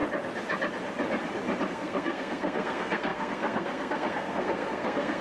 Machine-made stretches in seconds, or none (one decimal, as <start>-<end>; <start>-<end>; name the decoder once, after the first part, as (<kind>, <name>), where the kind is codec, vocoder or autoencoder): 1.7-5.2 (codec, SNAC)